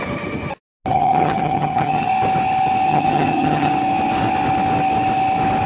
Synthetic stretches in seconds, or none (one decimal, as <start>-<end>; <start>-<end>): 0.9-2.1; 2.9-3.7